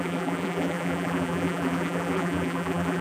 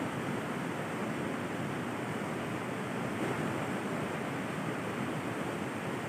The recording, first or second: second